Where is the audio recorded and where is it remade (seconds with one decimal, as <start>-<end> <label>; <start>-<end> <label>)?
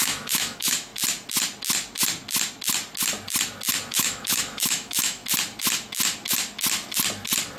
0.0-0.9 remade; 0.9-3.9 recorded; 3.9-5.2 remade; 5.2-7.6 recorded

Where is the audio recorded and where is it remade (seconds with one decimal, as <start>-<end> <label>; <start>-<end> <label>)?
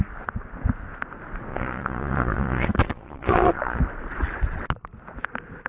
0.0-1.5 recorded; 1.5-3.8 remade; 3.8-5.7 recorded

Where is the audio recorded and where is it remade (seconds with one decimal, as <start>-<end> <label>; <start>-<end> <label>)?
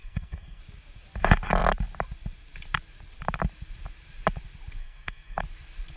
0.0-0.6 remade; 0.6-4.8 recorded; 4.8-5.4 remade; 5.4-6.0 recorded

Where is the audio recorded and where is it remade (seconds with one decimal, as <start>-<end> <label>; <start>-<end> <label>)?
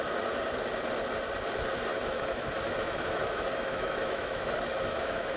0.0-1.9 recorded; 1.9-5.4 remade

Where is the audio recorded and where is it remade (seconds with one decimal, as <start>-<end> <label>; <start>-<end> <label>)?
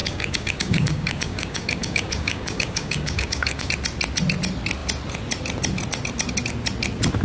0.0-3.7 remade; 3.7-7.2 recorded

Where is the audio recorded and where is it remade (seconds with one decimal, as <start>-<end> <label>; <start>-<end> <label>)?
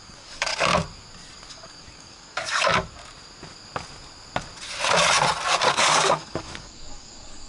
0.0-0.5 remade; 0.5-1.5 recorded; 1.5-2.7 remade; 2.7-5.7 recorded; 5.7-7.5 remade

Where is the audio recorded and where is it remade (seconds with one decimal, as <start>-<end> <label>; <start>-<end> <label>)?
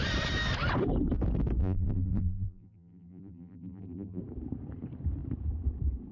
0.0-1.6 recorded; 1.6-4.2 remade; 4.2-6.1 recorded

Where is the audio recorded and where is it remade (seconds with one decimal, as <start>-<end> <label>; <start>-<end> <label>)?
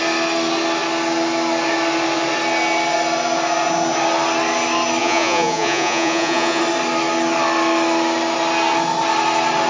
0.0-5.0 recorded; 5.0-6.6 remade; 6.6-9.7 recorded